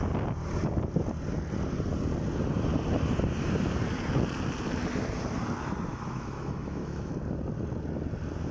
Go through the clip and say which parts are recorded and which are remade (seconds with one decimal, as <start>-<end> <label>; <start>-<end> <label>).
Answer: 0.0-5.9 recorded; 5.9-7.1 remade; 7.1-8.5 recorded